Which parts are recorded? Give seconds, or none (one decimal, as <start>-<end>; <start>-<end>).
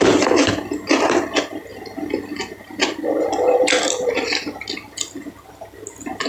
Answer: 0.0-6.3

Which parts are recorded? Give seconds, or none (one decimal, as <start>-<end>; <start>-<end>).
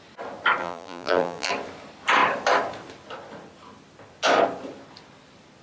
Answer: 0.0-0.6; 1.5-5.6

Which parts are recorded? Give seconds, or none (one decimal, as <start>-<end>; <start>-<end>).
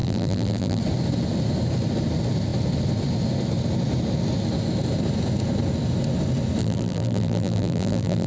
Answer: 0.8-6.6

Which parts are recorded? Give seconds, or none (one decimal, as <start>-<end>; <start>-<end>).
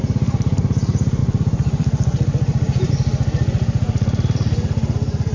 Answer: 0.0-1.2; 2.9-5.3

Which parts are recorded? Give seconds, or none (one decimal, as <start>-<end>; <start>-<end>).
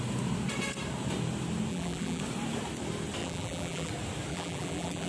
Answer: 0.0-1.7; 2.2-3.2; 3.9-4.3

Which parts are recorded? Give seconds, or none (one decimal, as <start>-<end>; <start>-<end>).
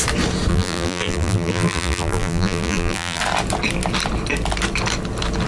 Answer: 0.0-0.5; 3.2-5.5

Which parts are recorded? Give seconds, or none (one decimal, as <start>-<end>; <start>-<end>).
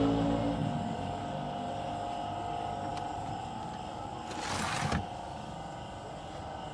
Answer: 0.0-2.9; 4.1-6.7